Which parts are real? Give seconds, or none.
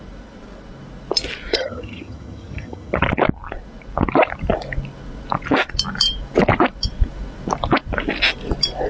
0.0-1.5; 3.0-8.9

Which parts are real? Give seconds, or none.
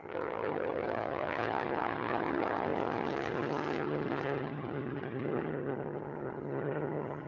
none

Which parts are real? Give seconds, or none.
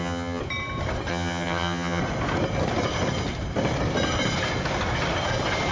0.4-1.1; 2.0-5.7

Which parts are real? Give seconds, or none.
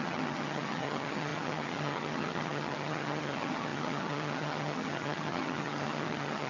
none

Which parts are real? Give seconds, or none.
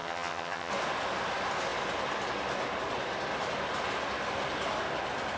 0.7-5.4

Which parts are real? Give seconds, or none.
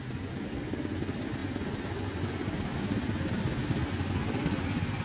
0.0-5.0